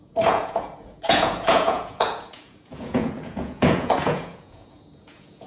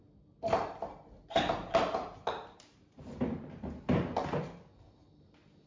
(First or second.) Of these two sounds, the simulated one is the first